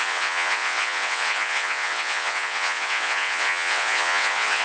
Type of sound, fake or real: fake